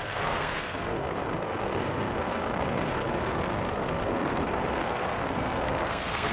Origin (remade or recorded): remade